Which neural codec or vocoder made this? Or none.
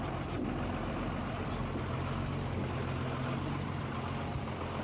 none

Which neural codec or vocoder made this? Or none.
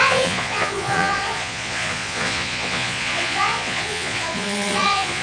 vocoder, Vocos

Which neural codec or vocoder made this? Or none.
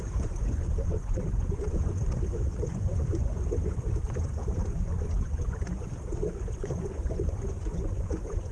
vocoder, Vocos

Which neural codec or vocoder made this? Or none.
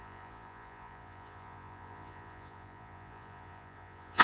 vocoder, Vocos